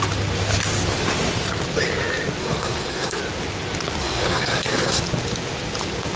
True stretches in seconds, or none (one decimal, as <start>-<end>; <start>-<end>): 0.0-2.4; 3.2-4.0; 5.0-6.2